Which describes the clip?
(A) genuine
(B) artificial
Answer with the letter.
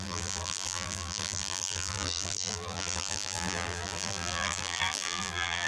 B